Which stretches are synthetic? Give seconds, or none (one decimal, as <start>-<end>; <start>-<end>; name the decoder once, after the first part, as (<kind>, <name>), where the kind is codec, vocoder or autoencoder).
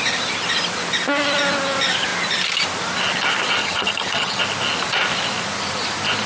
3.6-4.4 (vocoder, HiFi-GAN)